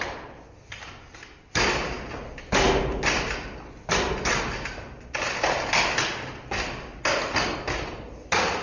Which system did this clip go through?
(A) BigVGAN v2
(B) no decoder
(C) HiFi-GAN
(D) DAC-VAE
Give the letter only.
B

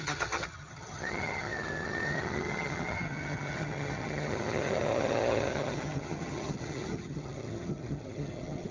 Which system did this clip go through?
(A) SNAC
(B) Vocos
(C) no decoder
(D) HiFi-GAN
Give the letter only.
D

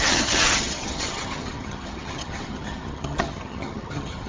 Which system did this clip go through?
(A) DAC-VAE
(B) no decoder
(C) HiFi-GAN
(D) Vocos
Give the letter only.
C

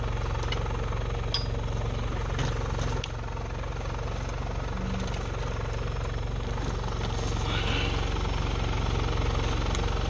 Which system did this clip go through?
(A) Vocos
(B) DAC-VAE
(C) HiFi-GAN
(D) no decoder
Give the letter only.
D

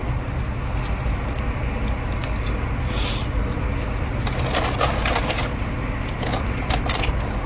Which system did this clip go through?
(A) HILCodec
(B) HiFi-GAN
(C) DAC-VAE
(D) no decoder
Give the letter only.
D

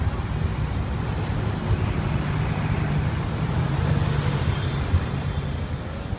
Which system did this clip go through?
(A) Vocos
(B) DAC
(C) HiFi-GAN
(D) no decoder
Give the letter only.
D